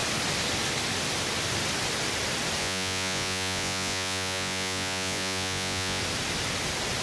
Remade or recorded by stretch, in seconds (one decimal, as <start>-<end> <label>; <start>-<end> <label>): 0.0-2.6 recorded; 2.6-6.0 remade; 6.0-7.0 recorded